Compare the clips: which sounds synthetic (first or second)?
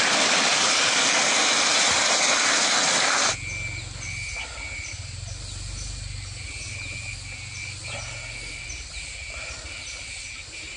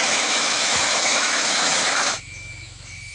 second